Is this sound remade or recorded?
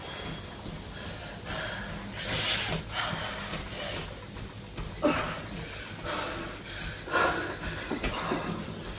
recorded